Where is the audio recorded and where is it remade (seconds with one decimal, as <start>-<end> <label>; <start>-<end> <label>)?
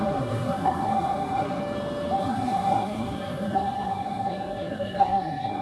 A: 0.0-1.6 remade; 1.6-2.2 recorded; 2.2-5.6 remade